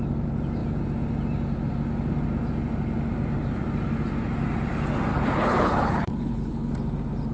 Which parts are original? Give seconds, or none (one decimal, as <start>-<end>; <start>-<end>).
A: 0.0-5.1; 6.7-7.3